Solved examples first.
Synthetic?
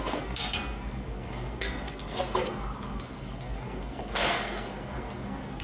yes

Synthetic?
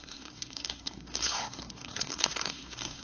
yes